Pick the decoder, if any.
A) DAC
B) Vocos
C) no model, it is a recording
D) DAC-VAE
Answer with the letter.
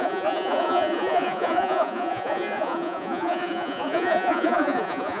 B